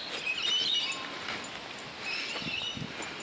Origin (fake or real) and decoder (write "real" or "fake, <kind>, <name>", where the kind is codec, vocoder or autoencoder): real